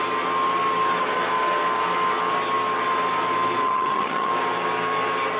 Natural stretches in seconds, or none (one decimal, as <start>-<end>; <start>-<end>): 0.0-3.6; 4.3-5.4